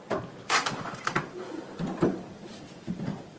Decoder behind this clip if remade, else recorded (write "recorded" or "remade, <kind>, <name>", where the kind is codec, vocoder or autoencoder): remade, vocoder, BigVGAN v2